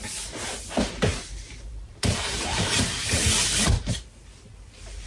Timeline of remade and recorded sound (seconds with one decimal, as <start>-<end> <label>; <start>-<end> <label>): 0.0-1.1 recorded; 1.1-2.8 remade; 2.8-5.1 recorded